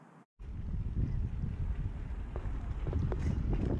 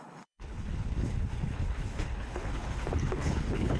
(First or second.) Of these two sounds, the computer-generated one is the second